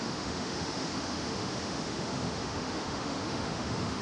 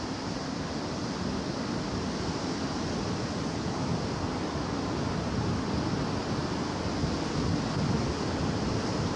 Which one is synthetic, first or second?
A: first